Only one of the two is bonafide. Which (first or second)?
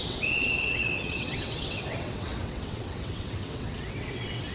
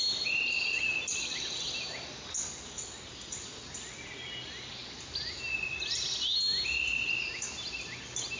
second